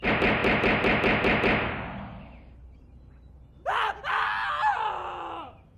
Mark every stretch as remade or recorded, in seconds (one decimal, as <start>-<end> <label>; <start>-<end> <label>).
0.0-5.8 recorded